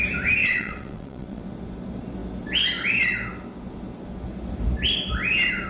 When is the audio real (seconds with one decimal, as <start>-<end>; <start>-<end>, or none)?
0.0-0.4; 1.4-5.7